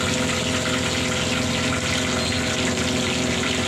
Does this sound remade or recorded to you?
recorded